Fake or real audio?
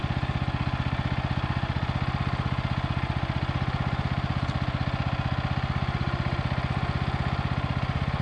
real